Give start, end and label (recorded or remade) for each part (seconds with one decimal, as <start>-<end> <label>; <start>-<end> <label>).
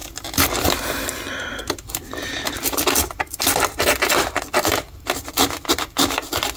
0.0-6.6 recorded